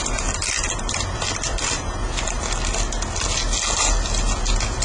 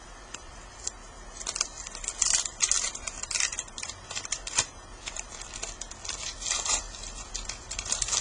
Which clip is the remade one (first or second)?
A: second